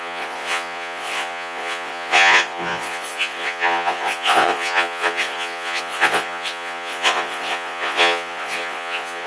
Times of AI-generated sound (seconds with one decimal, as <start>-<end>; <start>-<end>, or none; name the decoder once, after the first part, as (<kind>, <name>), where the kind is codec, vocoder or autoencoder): 0.0-9.3 (vocoder, Vocos)